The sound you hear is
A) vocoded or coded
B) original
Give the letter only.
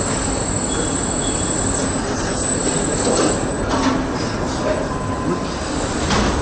B